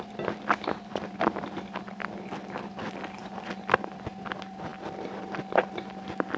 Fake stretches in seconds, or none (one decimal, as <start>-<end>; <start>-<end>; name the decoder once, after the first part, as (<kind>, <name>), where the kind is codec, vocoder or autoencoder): none